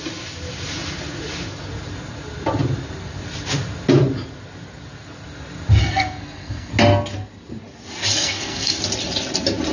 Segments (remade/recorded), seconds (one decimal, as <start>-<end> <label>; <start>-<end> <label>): 0.0-5.8 recorded; 5.8-6.7 remade; 6.7-8.1 recorded; 8.1-8.8 remade; 8.8-9.7 recorded